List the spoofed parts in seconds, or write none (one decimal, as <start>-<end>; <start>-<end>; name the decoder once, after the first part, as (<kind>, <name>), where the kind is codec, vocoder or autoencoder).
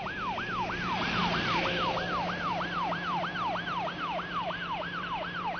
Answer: none